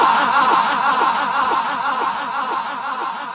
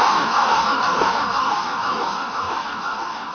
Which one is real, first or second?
first